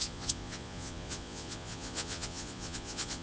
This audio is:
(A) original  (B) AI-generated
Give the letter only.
B